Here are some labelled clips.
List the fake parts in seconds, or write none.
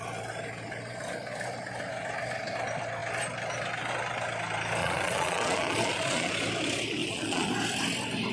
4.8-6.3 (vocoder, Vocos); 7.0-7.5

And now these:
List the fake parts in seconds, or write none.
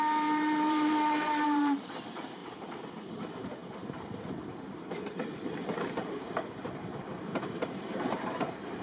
0.0-2.4 (vocoder, BigVGAN v2); 3.0-8.8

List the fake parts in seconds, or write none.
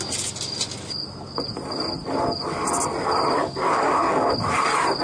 3.4-4.3 (codec, DAC)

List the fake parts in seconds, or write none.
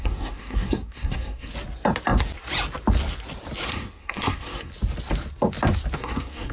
0.0-1.5 (codec, SNAC); 3.7-4.7; 6.0-6.5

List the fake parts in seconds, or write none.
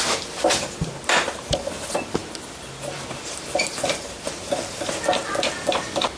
none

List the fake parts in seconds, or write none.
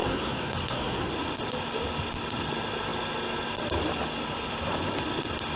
0.0-1.1 (codec, SNAC)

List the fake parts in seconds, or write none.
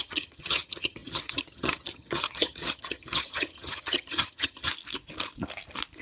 0.0-4.7 (vocoder, HiFi-GAN)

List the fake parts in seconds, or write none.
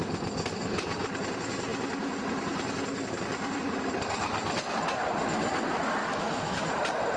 6.0-6.6 (autoencoder, DAC-VAE)